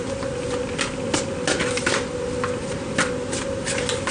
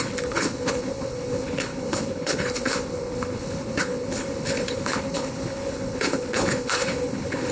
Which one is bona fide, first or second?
first